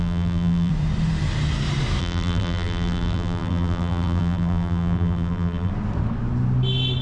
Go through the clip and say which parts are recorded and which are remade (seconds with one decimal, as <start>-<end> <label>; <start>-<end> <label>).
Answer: 0.0-0.7 remade; 0.7-2.0 recorded; 2.0-5.7 remade; 5.7-7.0 recorded